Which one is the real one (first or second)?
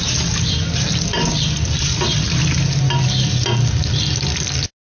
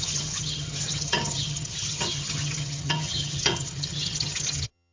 first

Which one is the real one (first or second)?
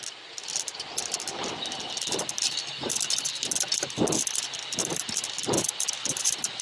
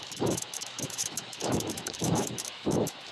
first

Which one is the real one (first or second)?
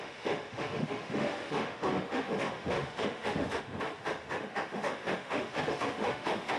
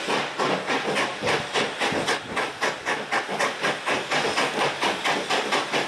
second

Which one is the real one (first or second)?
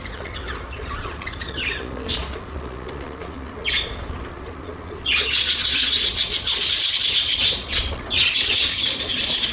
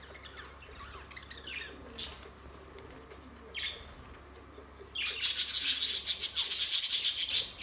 second